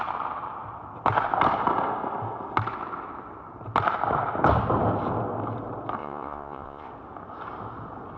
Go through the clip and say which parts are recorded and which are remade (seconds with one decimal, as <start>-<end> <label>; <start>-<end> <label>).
0.0-6.0 recorded; 6.0-6.9 remade; 6.9-8.2 recorded

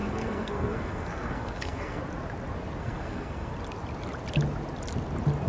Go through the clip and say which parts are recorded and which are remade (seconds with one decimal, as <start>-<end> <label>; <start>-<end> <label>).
0.0-2.0 remade; 2.0-2.8 recorded; 2.8-3.5 remade; 3.5-5.5 recorded